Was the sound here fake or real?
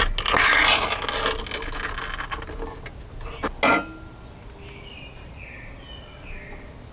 real